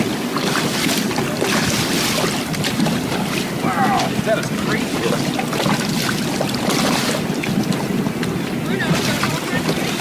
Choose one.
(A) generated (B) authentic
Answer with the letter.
B